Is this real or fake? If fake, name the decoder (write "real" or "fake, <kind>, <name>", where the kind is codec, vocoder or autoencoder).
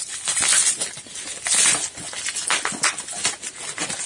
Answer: real